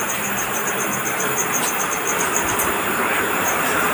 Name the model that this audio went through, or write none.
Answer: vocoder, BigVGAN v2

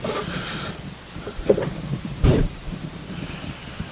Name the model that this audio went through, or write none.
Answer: vocoder, BigVGAN v2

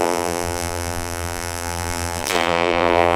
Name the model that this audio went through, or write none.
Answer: vocoder, BigVGAN v2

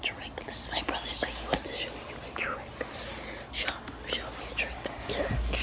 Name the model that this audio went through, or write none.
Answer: none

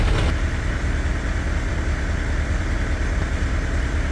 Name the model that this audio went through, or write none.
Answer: vocoder, BigVGAN v2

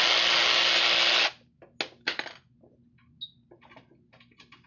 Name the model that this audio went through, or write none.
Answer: none